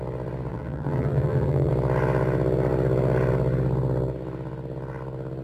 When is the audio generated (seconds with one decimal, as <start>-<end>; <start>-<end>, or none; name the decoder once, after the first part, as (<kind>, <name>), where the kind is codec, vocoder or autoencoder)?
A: 0.5-1.7 (vocoder, BigVGAN v2)